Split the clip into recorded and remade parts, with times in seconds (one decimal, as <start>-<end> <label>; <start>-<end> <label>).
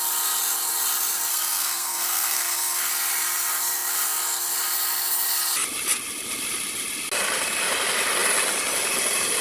0.0-1.3 recorded; 1.3-2.9 remade; 2.9-9.4 recorded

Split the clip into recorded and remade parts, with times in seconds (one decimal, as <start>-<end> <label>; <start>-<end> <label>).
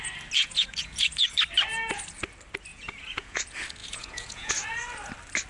0.0-0.4 recorded; 0.4-1.3 remade; 1.3-2.7 recorded; 2.7-3.4 remade; 3.4-3.8 recorded; 3.8-4.5 remade; 4.5-5.5 recorded